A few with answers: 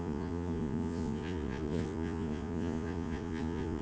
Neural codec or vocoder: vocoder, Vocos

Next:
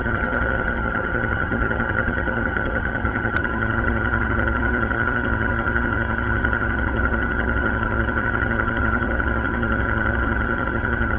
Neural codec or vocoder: vocoder, HiFi-GAN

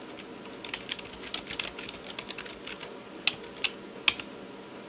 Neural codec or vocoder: none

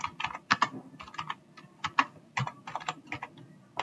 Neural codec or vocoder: none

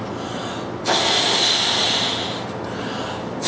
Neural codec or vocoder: none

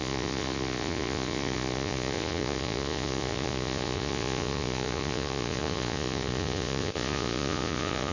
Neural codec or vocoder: vocoder, Vocos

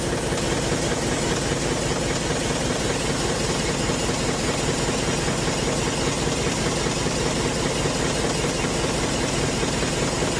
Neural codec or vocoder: none